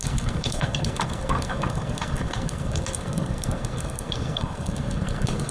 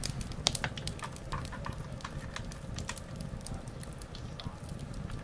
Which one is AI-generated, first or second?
first